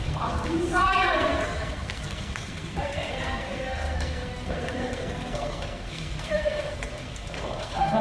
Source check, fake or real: fake